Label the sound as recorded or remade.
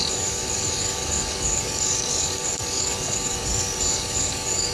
remade